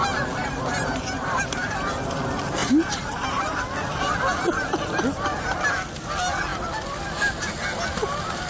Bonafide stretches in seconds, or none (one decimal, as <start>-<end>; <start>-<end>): 0.0-0.4; 2.2-2.6; 3.6-8.5

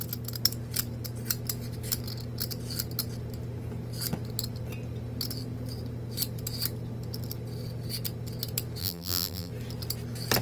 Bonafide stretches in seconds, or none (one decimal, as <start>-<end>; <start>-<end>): 0.0-8.8; 9.5-10.4